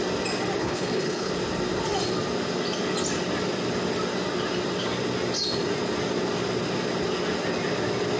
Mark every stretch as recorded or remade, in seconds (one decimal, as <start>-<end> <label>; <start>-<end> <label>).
0.0-0.6 recorded; 0.6-1.3 remade; 1.3-8.2 recorded